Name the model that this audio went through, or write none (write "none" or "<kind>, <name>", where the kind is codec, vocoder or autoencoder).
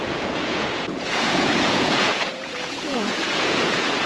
vocoder, Vocos